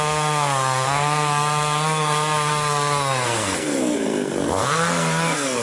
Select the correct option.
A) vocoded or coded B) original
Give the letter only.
A